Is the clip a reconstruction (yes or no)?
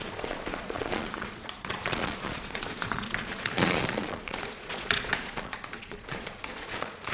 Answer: yes